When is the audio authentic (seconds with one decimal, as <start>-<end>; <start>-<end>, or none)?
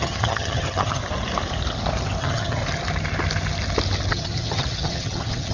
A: 1.0-2.2; 2.6-4.1